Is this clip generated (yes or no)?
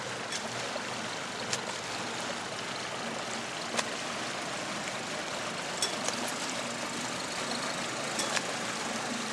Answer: no